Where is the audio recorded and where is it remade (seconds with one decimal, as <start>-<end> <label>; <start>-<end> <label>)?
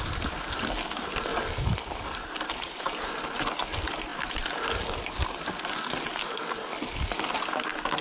0.0-8.0 recorded